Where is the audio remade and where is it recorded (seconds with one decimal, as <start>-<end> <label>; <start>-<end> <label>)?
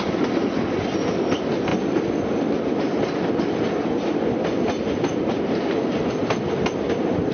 0.0-7.3 recorded